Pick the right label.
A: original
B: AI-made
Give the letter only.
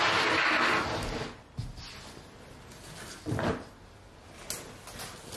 A